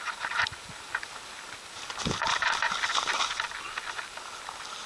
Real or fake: real